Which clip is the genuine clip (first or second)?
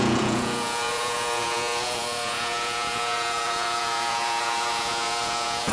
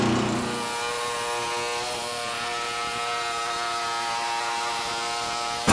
second